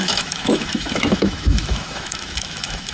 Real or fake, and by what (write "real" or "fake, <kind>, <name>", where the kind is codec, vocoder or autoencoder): fake, autoencoder, DAC-VAE